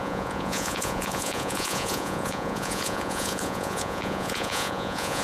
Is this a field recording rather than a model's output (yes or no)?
no